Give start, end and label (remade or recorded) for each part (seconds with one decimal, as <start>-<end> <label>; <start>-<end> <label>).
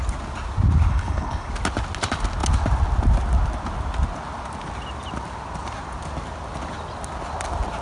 0.0-0.9 recorded; 0.9-1.5 remade; 1.5-7.8 recorded